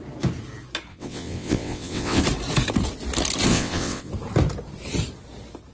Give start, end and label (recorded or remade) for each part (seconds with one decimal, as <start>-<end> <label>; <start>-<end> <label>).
0.0-0.9 recorded; 0.9-2.2 remade; 2.2-3.5 recorded; 3.5-4.1 remade; 4.1-5.7 recorded